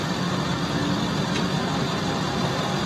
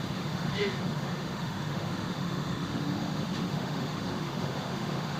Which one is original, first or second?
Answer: first